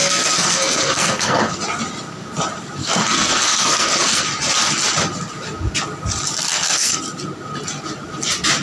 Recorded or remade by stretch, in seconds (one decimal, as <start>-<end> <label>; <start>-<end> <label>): 0.0-1.6 remade; 1.6-2.8 recorded; 2.8-4.2 remade; 4.2-6.5 recorded; 6.5-7.0 remade; 7.0-8.6 recorded